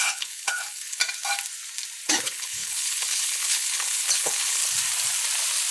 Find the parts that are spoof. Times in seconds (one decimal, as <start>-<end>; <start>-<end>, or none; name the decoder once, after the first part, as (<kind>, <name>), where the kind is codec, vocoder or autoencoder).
0.0-1.0 (codec, HILCodec); 2.1-4.6